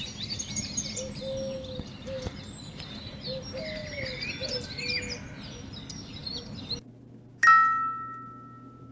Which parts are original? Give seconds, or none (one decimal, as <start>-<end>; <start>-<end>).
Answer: 0.0-8.9